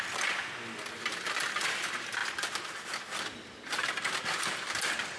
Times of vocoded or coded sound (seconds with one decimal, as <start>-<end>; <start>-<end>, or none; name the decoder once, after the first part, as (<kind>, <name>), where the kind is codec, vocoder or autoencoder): none